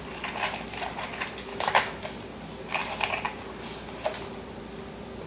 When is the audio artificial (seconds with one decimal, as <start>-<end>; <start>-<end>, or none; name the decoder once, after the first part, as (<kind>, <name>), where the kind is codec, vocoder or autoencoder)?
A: 1.5-2.0 (autoencoder, DAC-VAE)